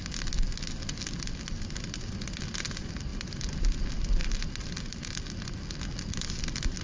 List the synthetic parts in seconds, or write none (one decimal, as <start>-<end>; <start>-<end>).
none